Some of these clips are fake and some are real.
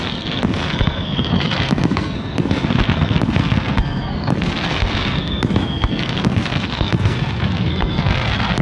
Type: fake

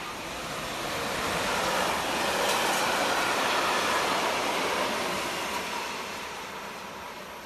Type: fake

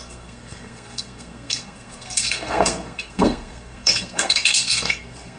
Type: fake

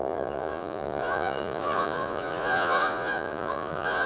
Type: fake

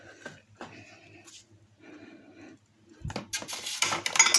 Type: real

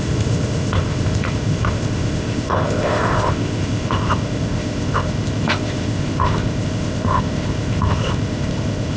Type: fake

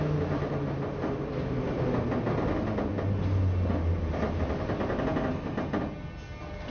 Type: real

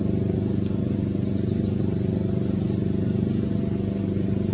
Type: real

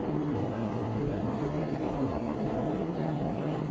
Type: fake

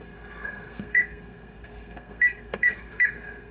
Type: fake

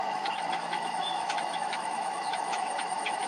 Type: fake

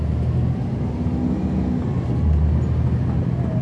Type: real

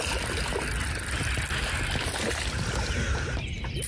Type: real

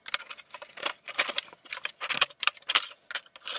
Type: real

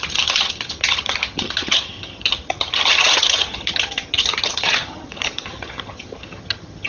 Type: fake